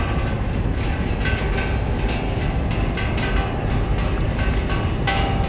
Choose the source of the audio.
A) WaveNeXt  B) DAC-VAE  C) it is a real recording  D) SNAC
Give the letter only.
C